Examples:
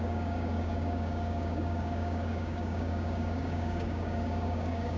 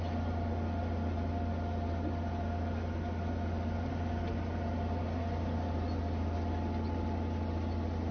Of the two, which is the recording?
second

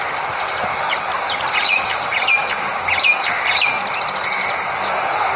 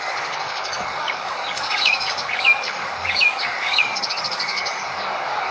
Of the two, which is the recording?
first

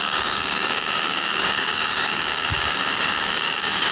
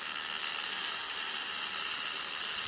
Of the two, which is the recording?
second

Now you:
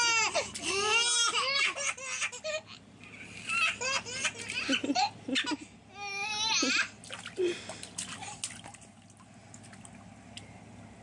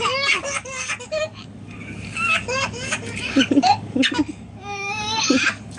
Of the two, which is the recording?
first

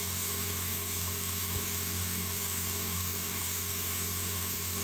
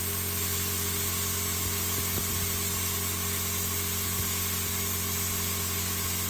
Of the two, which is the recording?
second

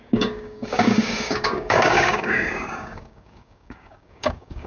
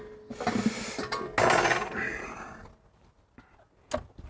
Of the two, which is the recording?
second